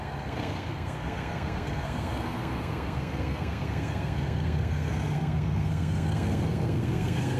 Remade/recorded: remade